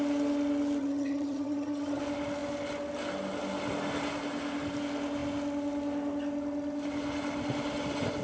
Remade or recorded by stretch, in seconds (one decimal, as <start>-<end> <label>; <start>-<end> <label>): 0.0-0.8 recorded; 0.8-2.0 remade; 2.0-8.2 recorded